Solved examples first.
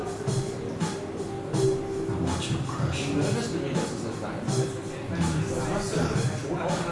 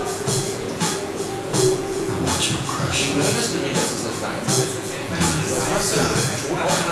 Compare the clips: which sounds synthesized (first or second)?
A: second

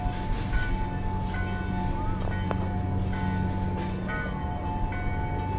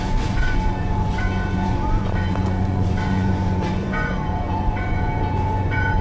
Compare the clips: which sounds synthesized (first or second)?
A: second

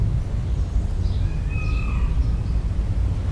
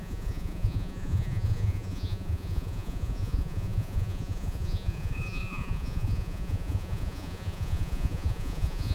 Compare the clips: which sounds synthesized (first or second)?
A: second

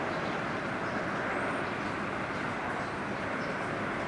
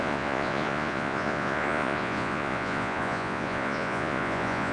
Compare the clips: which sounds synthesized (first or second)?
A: second